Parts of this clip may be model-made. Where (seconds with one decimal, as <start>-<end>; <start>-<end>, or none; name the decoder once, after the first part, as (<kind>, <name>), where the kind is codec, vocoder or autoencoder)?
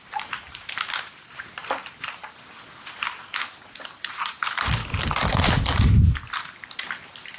0.0-2.2 (vocoder, BigVGAN v2); 4.1-4.8; 5.3-5.7; 6.4-7.4